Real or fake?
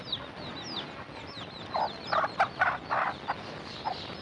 real